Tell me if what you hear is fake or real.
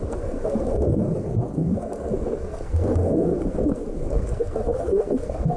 fake